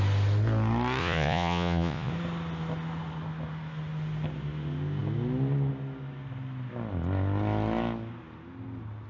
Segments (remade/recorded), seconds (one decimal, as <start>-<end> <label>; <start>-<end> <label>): 0.0-1.0 recorded; 1.0-2.1 remade; 2.1-9.1 recorded